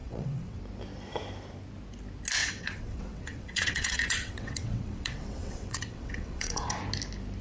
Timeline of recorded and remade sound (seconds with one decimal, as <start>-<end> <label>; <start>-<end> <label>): 0.0-0.6 remade; 0.6-2.4 recorded; 2.4-6.8 remade; 6.8-7.4 recorded